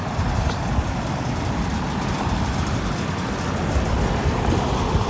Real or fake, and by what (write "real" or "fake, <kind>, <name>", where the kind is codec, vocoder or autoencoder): real